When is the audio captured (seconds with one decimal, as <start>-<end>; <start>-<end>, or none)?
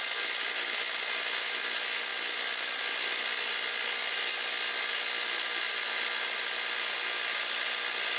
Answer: 0.0-8.2